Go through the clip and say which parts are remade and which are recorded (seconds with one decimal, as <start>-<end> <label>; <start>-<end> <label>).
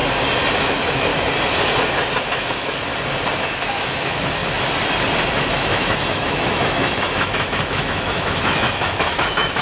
0.0-0.6 recorded; 0.6-1.1 remade; 1.1-2.2 recorded; 2.2-2.9 remade; 2.9-3.4 recorded; 3.4-4.4 remade; 4.4-5.5 recorded; 5.5-9.6 remade